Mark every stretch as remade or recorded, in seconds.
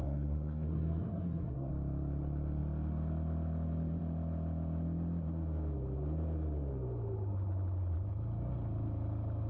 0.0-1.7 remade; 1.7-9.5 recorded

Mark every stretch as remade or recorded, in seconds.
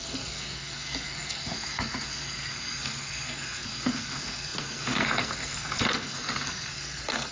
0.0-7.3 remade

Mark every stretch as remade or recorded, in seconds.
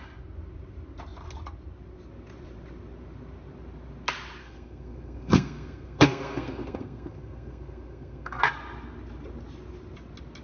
0.0-4.4 recorded; 4.4-8.4 remade; 8.4-10.4 recorded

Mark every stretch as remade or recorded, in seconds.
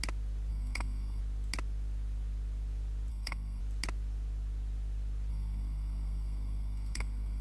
0.0-0.5 recorded; 0.5-1.2 remade; 1.2-3.1 recorded; 3.1-3.6 remade; 3.6-5.3 recorded; 5.3-7.4 remade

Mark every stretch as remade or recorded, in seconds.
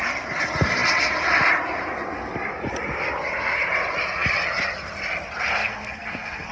0.0-5.6 recorded; 5.6-6.5 remade